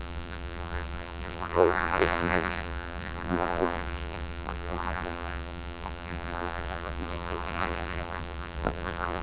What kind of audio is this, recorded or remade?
remade